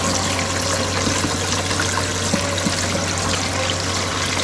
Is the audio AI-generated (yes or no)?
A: no